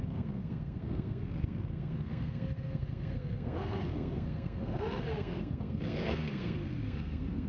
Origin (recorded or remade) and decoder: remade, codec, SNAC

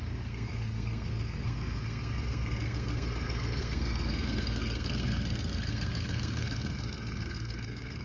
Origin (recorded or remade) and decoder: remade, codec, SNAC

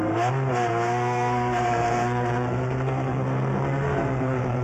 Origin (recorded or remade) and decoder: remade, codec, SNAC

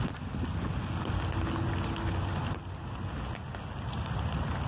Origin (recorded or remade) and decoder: recorded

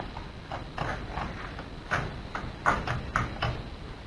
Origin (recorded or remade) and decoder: recorded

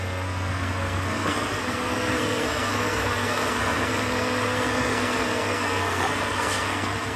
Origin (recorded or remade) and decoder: remade, codec, SNAC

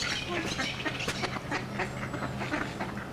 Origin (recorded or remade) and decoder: recorded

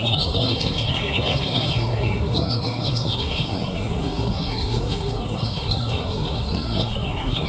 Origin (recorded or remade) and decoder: remade, codec, SNAC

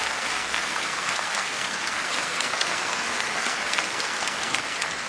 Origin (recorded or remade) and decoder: remade, codec, SNAC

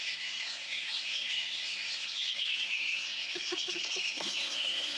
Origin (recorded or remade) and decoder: remade, codec, SNAC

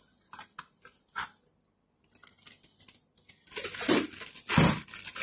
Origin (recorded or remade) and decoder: recorded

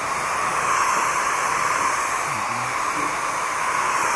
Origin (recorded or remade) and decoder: recorded